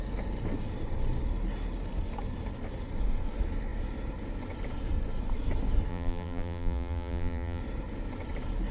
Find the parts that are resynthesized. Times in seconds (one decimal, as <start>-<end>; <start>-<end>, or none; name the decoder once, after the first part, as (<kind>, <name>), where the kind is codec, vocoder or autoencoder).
5.9-7.6 (vocoder, BigVGAN v2)